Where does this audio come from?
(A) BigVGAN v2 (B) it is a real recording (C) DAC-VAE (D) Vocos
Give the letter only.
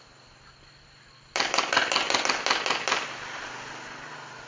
B